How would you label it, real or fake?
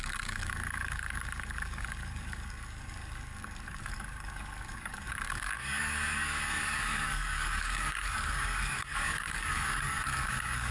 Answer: fake